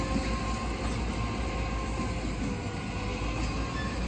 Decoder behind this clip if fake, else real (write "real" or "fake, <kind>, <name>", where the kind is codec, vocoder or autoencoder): real